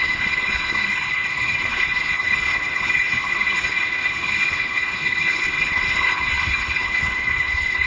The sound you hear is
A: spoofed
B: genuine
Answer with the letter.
A